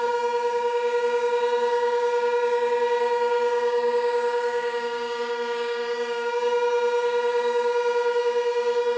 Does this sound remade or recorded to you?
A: remade